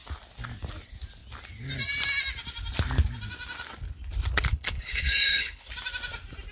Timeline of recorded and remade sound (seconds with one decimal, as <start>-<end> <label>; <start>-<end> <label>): 0.0-4.5 recorded; 4.5-5.7 remade; 5.7-6.5 recorded